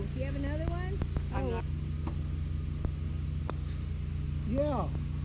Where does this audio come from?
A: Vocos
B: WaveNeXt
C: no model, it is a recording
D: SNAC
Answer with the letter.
C